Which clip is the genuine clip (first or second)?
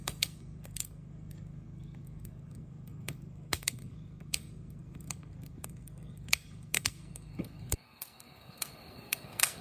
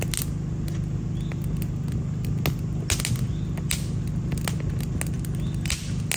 second